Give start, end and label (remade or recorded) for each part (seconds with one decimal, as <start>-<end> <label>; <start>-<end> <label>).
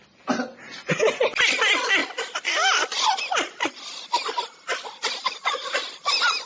0.0-6.5 recorded